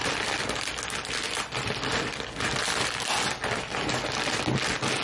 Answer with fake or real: real